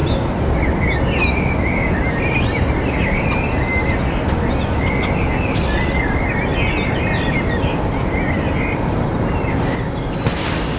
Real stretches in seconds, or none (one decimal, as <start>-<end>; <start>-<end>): 0.0-10.8